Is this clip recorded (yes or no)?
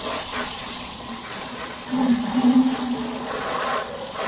no